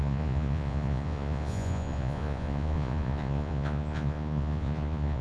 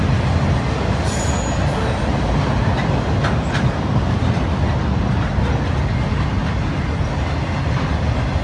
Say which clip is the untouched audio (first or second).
second